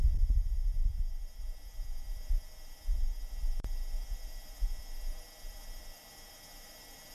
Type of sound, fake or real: fake